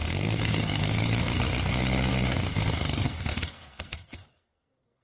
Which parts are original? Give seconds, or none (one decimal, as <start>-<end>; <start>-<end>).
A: none